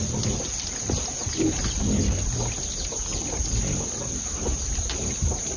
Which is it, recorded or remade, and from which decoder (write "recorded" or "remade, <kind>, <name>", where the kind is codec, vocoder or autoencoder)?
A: recorded